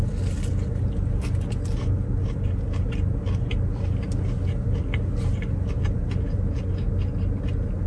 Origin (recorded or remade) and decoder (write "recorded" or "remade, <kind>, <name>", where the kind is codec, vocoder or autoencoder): recorded